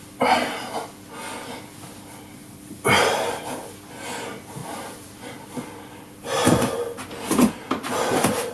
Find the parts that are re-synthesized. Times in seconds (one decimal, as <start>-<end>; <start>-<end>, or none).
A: 2.4-3.5; 4.6-5.2; 6.4-7.3